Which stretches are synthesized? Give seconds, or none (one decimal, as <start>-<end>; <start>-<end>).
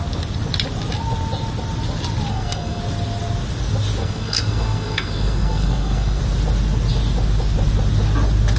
2.3-2.8; 4.0-6.2